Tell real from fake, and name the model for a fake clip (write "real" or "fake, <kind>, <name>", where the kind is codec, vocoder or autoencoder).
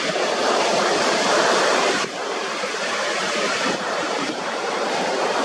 fake, vocoder, BigVGAN v2